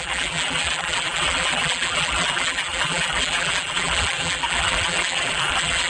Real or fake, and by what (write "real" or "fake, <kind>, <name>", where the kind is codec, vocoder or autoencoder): fake, vocoder, BigVGAN v2